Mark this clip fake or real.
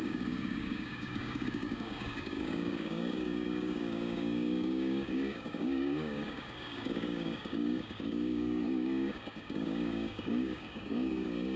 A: fake